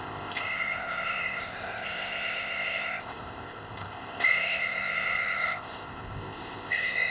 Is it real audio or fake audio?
fake